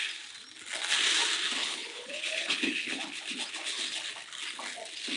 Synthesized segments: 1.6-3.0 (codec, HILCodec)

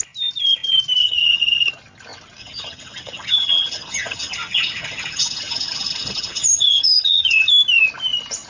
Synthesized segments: 1.0-1.7 (vocoder, HiFi-GAN); 2.4-7.5